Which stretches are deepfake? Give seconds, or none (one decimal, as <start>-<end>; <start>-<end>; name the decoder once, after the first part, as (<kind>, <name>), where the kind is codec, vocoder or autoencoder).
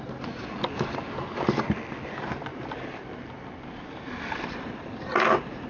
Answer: 2.5-5.7 (vocoder, BigVGAN v2)